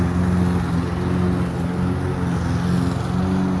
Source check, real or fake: real